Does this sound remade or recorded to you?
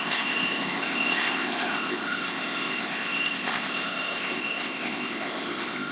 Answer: remade